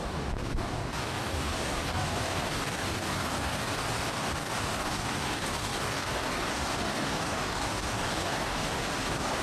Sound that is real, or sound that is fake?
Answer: fake